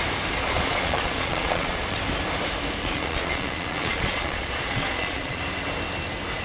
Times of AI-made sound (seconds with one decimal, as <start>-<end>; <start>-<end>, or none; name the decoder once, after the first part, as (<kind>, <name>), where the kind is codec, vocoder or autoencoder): 0.4-2.0 (vocoder, Vocos); 2.8-5.4